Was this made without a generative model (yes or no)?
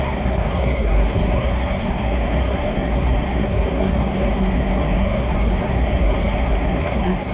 no